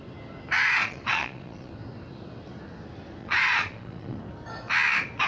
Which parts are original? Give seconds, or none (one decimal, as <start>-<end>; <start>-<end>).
0.0-0.6; 1.7-3.2; 4.2-5.3